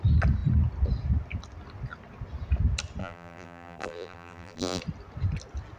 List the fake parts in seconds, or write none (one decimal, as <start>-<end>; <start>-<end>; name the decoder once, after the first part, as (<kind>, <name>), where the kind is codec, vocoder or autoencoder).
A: 3.0-4.8 (vocoder, BigVGAN v2)